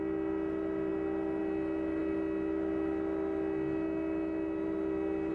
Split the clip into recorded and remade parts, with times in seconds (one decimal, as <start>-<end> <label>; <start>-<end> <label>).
0.0-5.3 recorded